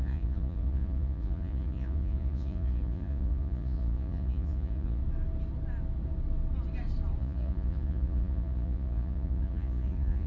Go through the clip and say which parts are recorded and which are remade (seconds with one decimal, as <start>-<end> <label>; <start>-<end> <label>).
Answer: 0.0-5.0 remade; 5.0-7.2 recorded; 7.2-10.3 remade